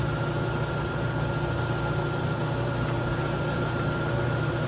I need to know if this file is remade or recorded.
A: recorded